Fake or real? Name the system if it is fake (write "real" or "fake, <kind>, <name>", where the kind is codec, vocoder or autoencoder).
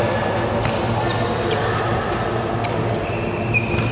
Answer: real